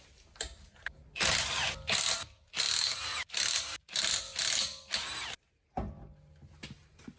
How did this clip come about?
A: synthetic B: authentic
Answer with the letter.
B